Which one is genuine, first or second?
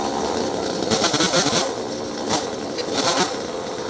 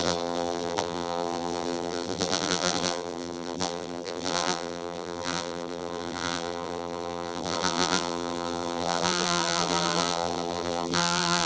first